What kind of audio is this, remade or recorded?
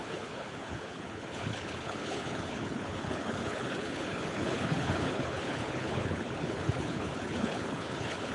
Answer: remade